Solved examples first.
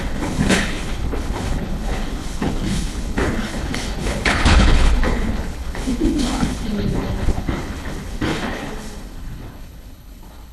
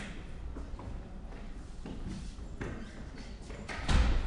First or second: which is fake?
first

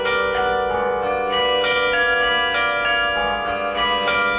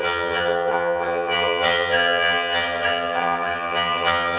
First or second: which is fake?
second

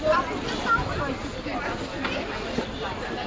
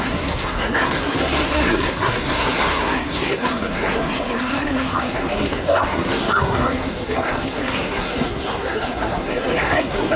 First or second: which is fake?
second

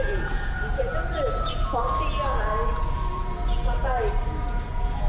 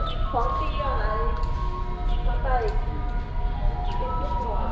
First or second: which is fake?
first